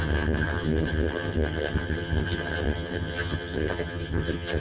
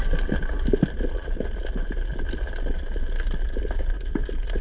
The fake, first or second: first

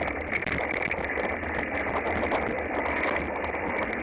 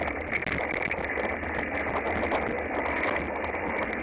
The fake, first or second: first